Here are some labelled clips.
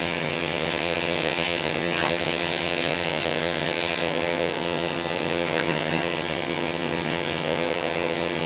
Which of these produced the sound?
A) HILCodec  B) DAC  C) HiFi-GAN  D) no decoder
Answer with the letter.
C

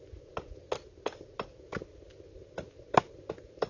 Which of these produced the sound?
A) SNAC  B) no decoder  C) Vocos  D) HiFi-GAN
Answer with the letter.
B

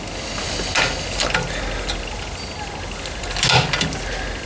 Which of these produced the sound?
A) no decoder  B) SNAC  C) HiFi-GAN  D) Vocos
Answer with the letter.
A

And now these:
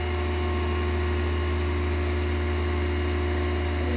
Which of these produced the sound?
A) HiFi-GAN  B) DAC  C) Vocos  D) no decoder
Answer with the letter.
D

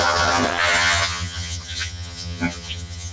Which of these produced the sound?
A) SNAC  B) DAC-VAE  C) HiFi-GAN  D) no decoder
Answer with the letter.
C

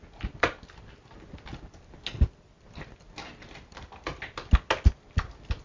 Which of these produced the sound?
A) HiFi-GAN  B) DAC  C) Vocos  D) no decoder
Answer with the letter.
D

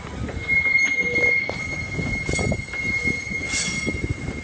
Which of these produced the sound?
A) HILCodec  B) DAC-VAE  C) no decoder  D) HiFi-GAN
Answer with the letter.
C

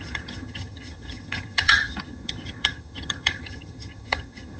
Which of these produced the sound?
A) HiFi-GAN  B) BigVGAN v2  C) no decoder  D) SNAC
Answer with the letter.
A